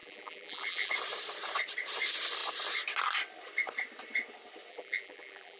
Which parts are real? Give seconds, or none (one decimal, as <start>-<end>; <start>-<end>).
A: 0.9-4.7